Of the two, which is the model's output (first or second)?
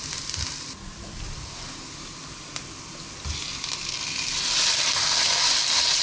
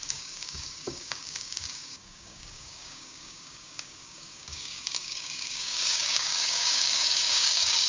second